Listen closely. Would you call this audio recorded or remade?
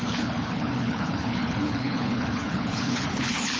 remade